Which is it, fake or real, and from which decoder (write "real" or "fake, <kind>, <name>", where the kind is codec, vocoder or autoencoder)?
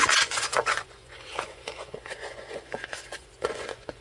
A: fake, vocoder, Vocos